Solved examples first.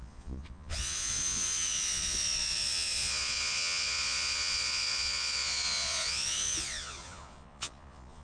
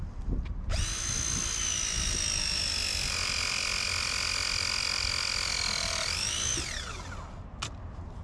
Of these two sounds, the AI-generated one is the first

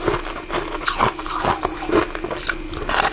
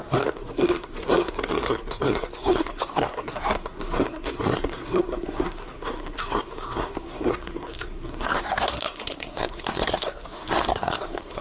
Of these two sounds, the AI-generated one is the second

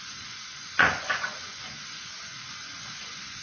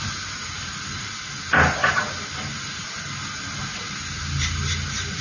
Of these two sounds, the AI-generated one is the first